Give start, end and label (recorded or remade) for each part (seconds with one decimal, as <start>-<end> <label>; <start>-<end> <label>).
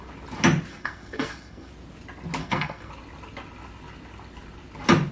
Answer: 0.0-0.7 recorded; 0.7-1.7 remade; 1.7-2.4 recorded; 2.4-2.9 remade; 2.9-5.1 recorded